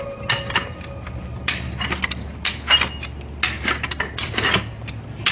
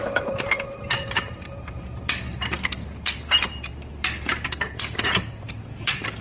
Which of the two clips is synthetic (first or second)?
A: second